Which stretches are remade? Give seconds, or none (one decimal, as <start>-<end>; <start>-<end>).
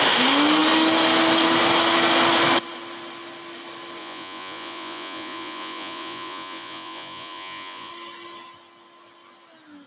4.0-7.9